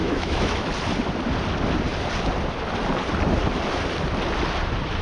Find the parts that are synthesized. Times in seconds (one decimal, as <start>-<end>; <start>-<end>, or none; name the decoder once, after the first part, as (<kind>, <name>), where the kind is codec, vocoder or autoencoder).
0.0-0.7 (autoencoder, DAC-VAE)